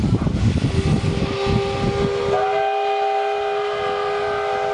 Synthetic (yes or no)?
no